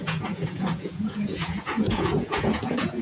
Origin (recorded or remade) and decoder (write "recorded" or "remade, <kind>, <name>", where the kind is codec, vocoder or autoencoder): remade, vocoder, Vocos